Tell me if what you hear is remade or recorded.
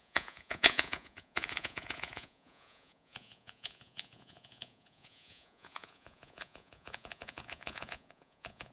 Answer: remade